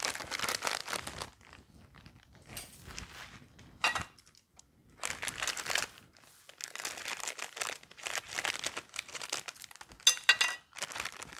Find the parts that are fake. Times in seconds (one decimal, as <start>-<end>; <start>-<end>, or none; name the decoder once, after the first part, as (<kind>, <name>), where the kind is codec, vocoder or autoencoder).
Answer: none